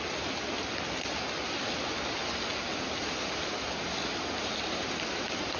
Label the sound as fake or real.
real